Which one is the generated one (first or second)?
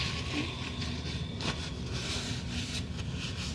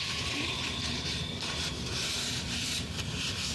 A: second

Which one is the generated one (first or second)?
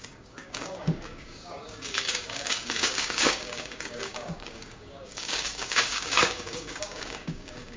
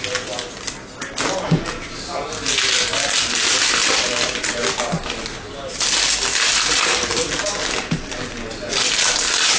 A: first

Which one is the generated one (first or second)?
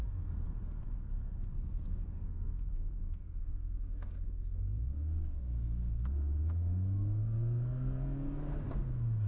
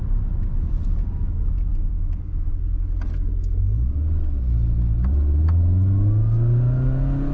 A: first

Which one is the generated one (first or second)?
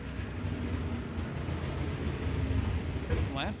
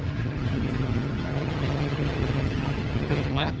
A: second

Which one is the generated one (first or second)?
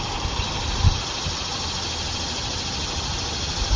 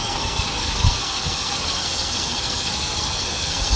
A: second